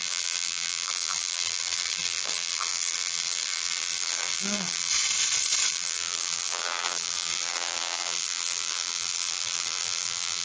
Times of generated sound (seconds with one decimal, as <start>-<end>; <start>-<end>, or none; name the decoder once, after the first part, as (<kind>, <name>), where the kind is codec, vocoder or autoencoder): 0.0-4.9 (vocoder, BigVGAN v2); 5.7-10.4